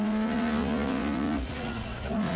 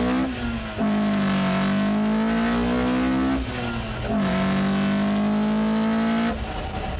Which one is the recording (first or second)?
second